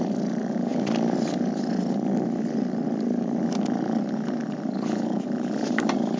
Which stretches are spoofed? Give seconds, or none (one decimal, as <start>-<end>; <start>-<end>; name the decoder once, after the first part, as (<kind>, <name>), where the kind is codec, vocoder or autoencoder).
none